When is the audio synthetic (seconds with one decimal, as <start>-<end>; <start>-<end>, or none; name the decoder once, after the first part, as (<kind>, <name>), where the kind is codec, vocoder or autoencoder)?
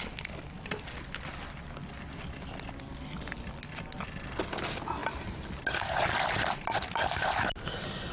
none